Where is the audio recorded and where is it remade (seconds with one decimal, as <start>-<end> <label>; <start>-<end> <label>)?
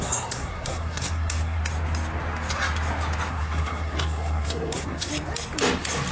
0.0-1.6 remade; 1.6-3.3 recorded; 3.3-5.1 remade; 5.1-6.1 recorded